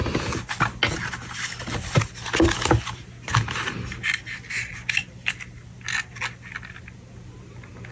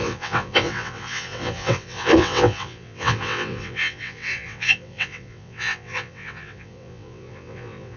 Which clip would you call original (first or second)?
first